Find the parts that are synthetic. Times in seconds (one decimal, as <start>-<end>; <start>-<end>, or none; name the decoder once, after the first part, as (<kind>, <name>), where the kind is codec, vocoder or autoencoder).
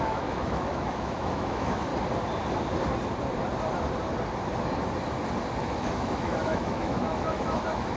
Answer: 0.0-1.9 (autoencoder, DAC-VAE); 5.6-8.0